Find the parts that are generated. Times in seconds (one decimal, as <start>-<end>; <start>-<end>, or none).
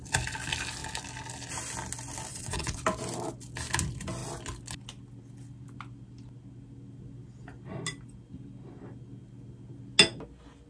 2.3-2.8